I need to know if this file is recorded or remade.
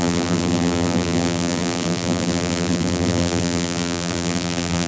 remade